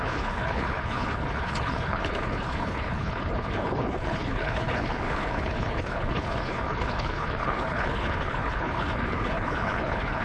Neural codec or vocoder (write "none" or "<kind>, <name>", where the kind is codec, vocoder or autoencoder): codec, HILCodec